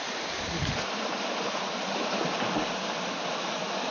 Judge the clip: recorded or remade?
recorded